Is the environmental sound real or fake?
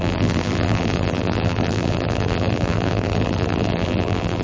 fake